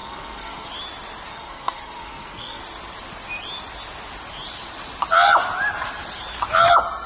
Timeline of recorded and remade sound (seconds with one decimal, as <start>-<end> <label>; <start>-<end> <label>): 0.0-0.7 remade; 0.7-1.3 recorded; 1.3-2.6 remade; 2.6-7.1 recorded